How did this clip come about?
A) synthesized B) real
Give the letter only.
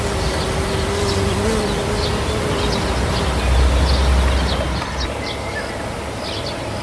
B